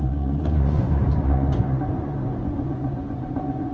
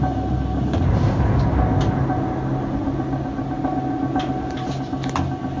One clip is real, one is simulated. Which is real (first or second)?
second